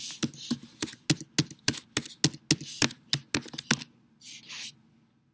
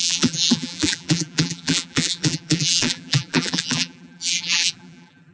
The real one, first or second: first